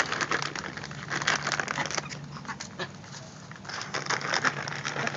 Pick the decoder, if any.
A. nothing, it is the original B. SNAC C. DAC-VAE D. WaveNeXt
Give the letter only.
A